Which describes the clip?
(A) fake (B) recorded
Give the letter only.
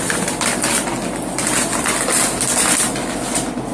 B